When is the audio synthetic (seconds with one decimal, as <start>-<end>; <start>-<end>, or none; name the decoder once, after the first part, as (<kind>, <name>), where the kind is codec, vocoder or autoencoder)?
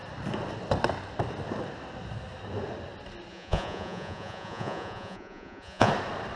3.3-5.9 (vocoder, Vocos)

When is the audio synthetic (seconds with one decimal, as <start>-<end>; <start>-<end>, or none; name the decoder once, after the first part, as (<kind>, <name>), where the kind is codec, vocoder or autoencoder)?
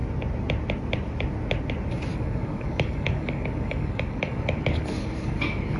2.1-5.8 (codec, DAC)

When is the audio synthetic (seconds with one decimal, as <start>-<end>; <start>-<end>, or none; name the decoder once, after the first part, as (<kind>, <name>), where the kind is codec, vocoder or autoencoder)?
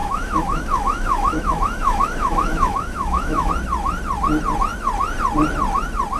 0.0-3.5 (autoencoder, DAC-VAE)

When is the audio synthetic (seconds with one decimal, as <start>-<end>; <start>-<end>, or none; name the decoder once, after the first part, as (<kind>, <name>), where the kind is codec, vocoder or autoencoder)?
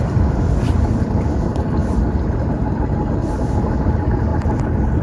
none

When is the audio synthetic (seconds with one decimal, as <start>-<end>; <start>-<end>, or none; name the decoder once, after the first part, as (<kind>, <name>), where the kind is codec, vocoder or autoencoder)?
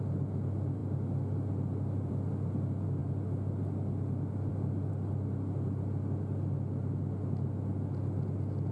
none